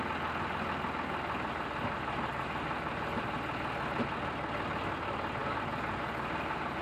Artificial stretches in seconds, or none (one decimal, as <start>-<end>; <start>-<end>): none